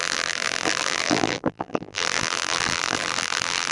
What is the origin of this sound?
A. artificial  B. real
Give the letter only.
A